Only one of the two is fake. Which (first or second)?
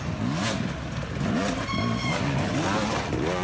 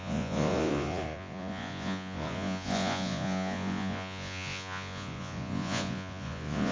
second